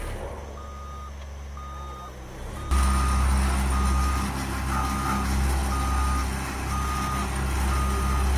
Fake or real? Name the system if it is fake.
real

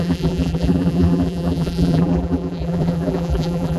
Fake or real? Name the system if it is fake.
fake, vocoder, BigVGAN v2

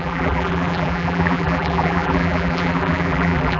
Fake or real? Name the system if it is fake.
fake, vocoder, BigVGAN v2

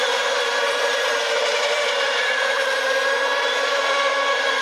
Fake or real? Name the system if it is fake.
fake, vocoder, BigVGAN v2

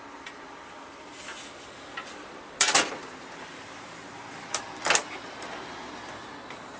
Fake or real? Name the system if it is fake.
fake, vocoder, BigVGAN v2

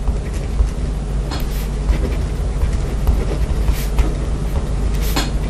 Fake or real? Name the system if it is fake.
real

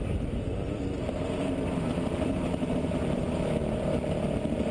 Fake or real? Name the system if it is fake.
fake, vocoder, BigVGAN v2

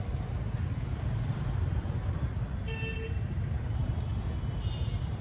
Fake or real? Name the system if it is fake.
real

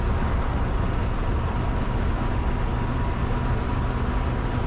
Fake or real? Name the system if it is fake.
real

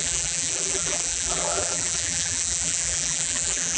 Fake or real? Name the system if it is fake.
fake, vocoder, BigVGAN v2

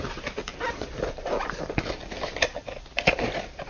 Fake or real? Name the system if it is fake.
fake, vocoder, BigVGAN v2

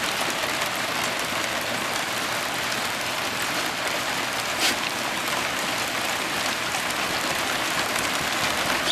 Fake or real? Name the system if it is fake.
fake, vocoder, BigVGAN v2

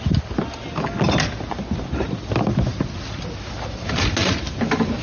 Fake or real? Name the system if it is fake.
real